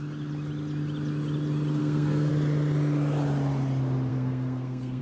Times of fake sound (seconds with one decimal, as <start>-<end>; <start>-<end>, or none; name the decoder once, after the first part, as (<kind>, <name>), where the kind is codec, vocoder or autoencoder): 1.8-2.3 (codec, SNAC); 4.1-5.0